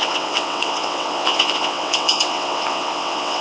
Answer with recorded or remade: remade